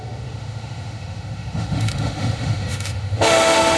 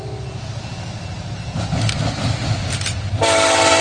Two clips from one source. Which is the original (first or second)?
second